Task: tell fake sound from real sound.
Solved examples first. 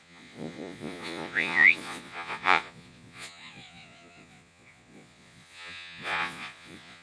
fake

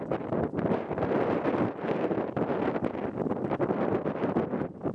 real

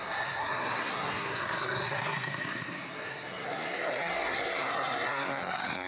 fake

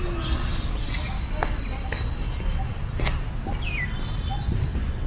real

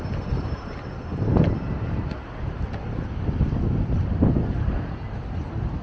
real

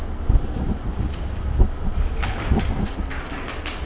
real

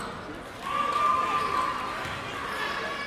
real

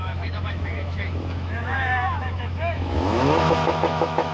fake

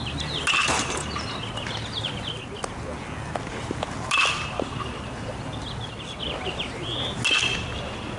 real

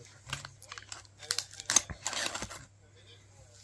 real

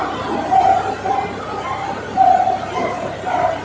real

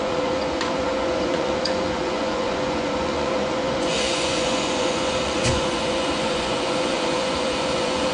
fake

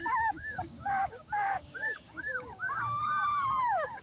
fake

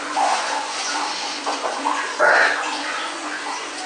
fake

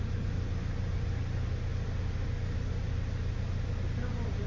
real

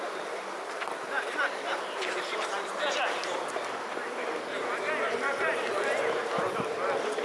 fake